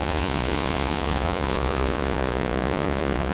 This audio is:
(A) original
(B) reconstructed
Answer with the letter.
B